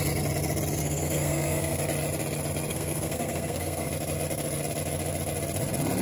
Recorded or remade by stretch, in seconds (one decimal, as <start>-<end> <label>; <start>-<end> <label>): 0.0-0.8 recorded; 0.8-1.8 remade; 1.8-2.7 recorded; 2.7-3.9 remade; 3.9-6.0 recorded

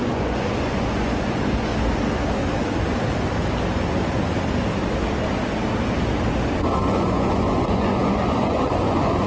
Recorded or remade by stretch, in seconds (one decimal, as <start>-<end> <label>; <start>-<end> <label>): 0.0-1.7 remade; 1.7-6.4 recorded; 6.4-9.3 remade

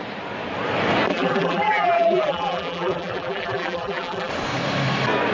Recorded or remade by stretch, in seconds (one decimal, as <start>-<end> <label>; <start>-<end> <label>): 0.0-1.1 recorded; 1.1-4.3 remade; 4.3-5.3 recorded

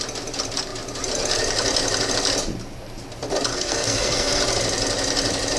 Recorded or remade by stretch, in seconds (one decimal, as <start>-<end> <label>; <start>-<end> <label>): 0.0-3.5 recorded; 3.5-4.4 remade; 4.4-5.6 recorded

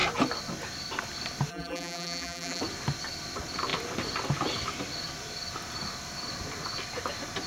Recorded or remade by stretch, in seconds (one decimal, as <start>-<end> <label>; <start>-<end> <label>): 0.0-1.5 recorded; 1.5-2.6 remade; 2.6-7.5 recorded

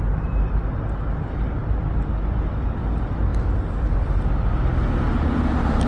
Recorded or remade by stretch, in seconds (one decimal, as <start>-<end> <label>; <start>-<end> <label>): 0.0-1.6 recorded; 1.6-2.8 remade; 2.8-5.9 recorded

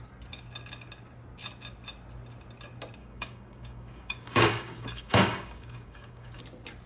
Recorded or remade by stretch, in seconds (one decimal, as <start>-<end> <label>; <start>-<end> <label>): 0.0-3.0 recorded; 3.0-6.4 remade; 6.4-6.9 recorded

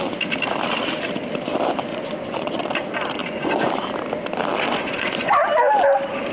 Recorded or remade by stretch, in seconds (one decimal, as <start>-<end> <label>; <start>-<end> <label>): 0.0-1.9 recorded; 1.9-2.6 remade; 2.6-3.2 recorded; 3.2-3.7 remade; 3.7-4.7 recorded; 4.7-5.3 remade; 5.3-6.3 recorded